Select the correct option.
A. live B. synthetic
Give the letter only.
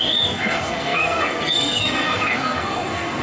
B